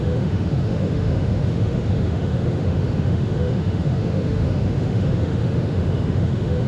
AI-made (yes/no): yes